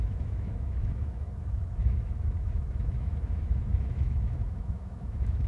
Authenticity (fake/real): fake